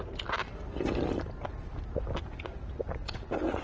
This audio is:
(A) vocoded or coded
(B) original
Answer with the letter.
B